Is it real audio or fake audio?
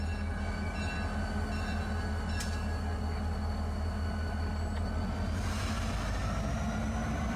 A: real